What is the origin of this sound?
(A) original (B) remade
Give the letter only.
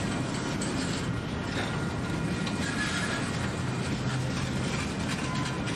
A